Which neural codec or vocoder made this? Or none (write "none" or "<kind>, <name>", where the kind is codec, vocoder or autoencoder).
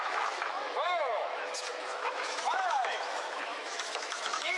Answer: autoencoder, DAC-VAE